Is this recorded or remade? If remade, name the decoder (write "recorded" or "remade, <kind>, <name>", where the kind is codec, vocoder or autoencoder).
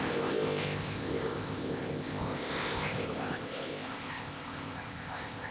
remade, codec, ZipCodec